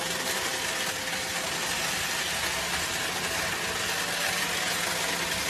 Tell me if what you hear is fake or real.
real